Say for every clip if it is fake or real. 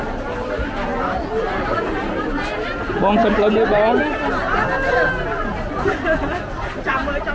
real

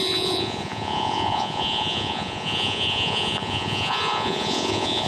fake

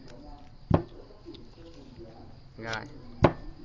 real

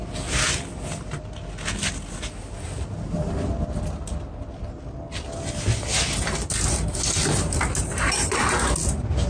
real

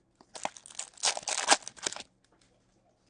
real